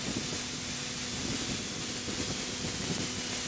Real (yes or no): yes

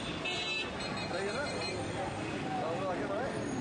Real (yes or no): yes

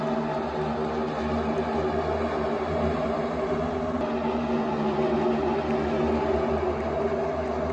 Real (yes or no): yes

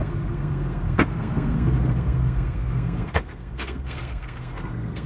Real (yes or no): no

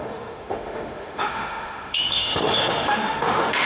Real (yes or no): no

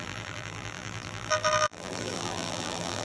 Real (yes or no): no